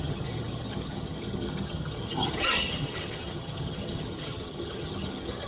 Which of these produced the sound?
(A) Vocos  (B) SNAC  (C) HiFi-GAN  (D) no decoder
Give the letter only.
C